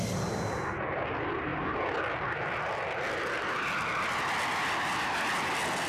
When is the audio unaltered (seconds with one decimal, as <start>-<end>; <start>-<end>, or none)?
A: 0.0-5.9